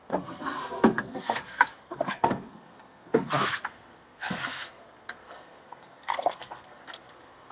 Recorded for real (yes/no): no